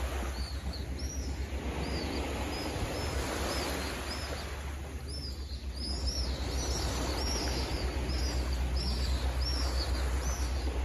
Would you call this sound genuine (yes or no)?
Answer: yes